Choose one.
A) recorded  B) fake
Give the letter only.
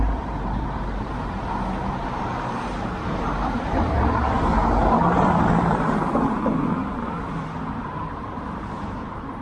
B